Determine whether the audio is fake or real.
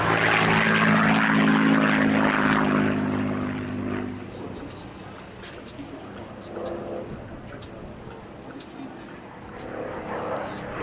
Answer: real